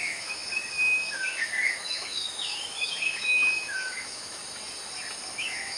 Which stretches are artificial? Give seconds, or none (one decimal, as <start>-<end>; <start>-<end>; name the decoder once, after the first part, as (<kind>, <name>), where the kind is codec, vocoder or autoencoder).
0.0-4.4 (autoencoder, DAC-VAE); 5.3-5.8